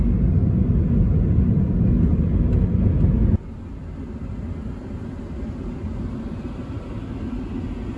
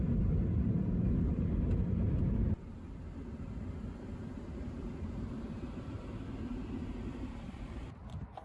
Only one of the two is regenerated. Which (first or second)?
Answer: second